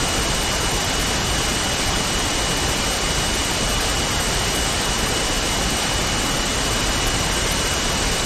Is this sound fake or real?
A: real